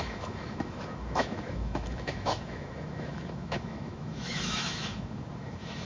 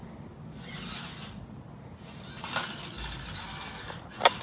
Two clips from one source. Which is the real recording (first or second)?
second